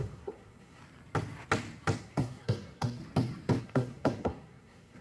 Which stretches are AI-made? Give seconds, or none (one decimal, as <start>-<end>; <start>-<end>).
0.0-0.8; 2.0-3.0; 3.6-5.0